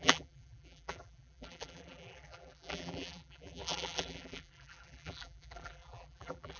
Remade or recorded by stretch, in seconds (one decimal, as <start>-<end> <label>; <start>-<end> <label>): 0.0-6.6 remade